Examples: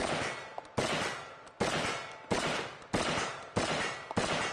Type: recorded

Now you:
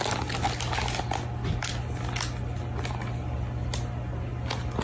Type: recorded